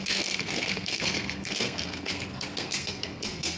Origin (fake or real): fake